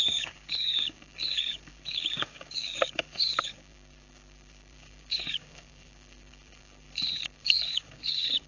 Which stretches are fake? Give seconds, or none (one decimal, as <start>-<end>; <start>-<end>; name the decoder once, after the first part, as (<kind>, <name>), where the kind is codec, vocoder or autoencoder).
0.0-8.5 (codec, DAC)